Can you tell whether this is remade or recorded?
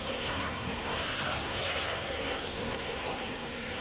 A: remade